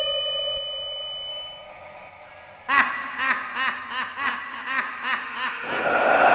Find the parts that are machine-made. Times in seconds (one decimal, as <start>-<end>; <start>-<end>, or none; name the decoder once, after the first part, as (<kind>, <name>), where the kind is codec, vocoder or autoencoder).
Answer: none